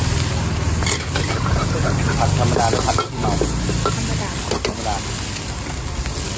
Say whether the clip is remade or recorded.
recorded